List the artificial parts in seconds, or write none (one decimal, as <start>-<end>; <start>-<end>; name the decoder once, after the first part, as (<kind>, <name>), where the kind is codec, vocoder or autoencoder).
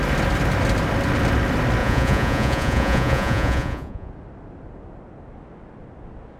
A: 1.8-4.1 (vocoder, Vocos)